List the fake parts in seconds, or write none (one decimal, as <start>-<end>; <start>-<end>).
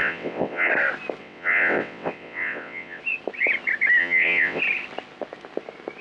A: 0.0-0.7; 1.2-3.0; 4.0-4.6